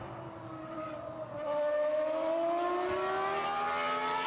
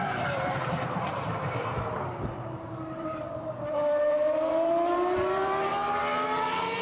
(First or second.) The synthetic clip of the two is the second